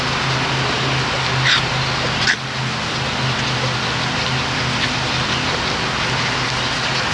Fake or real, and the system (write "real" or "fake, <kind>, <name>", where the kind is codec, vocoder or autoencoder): real